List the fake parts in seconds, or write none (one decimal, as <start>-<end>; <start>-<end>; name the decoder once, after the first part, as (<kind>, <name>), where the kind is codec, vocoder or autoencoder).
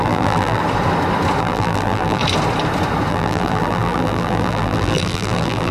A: 0.0-0.6 (vocoder, BigVGAN v2); 1.4-2.2; 3.1-5.7